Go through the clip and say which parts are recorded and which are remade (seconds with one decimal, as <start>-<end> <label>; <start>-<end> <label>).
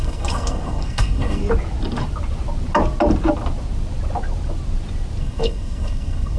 0.0-1.4 remade; 1.4-5.2 recorded; 5.2-6.4 remade